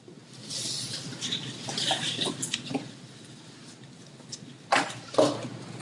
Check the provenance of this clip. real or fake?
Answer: real